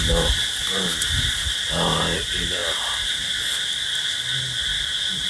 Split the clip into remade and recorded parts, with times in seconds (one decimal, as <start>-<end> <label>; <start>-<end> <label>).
0.0-5.3 recorded

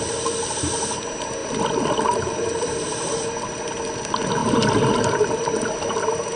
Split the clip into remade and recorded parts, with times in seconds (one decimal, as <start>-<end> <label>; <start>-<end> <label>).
0.0-1.4 recorded; 1.4-4.0 remade; 4.0-4.4 recorded; 4.4-5.4 remade; 5.4-6.4 recorded

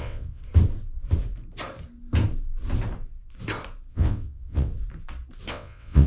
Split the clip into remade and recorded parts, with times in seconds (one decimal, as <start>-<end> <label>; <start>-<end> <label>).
0.0-0.4 remade; 0.4-3.9 recorded; 3.9-4.7 remade; 4.7-5.5 recorded; 5.5-6.1 remade

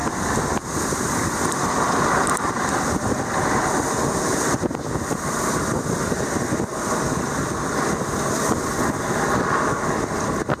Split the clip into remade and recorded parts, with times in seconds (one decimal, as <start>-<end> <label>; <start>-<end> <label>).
0.0-4.5 remade; 4.5-6.7 recorded; 6.7-8.4 remade; 8.4-10.6 recorded

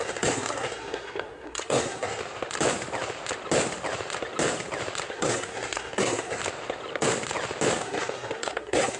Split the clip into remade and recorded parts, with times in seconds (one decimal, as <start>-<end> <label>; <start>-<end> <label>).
0.0-2.2 remade; 2.2-5.1 recorded; 5.1-6.4 remade; 6.4-7.8 recorded; 7.8-9.0 remade

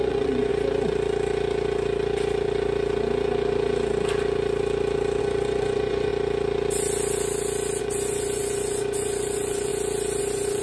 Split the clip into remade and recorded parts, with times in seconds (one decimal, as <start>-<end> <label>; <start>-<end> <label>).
0.0-0.5 remade; 0.5-5.2 recorded; 5.2-6.1 remade; 6.1-7.8 recorded; 7.8-9.7 remade; 9.7-10.2 recorded; 10.2-10.6 remade